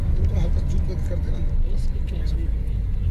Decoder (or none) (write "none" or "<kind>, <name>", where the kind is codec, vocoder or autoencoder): none